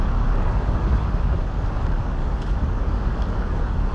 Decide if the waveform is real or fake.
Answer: fake